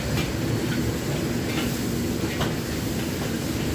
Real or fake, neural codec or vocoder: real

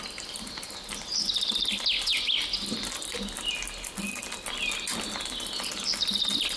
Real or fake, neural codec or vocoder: real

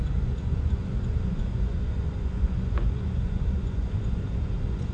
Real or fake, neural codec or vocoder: fake, vocoder, Vocos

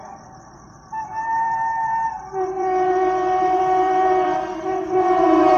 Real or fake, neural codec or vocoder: fake, vocoder, BigVGAN v2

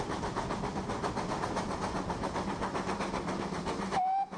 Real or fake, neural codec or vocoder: real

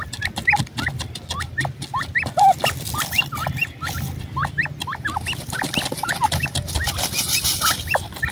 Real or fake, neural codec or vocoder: real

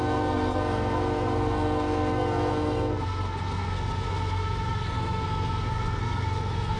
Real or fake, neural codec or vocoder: fake, codec, SNAC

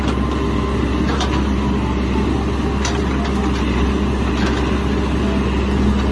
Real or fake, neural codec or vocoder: real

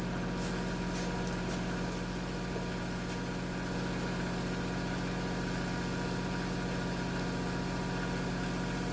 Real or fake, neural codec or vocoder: real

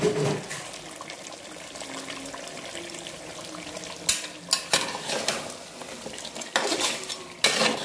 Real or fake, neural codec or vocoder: real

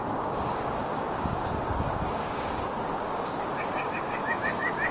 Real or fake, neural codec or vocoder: fake, codec, DAC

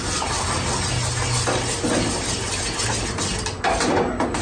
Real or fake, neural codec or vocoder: real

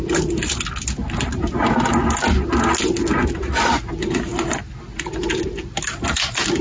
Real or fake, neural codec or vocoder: real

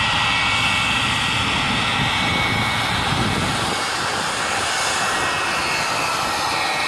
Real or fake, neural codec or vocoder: real